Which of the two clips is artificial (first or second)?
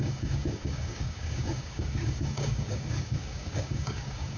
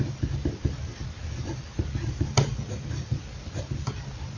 first